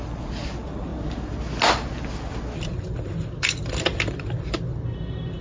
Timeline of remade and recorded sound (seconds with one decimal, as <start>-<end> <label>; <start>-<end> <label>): 0.0-5.4 recorded